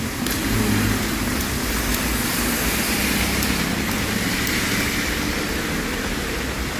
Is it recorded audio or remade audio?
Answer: recorded